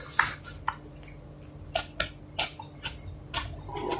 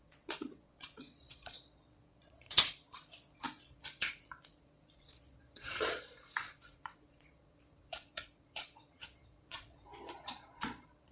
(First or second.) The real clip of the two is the first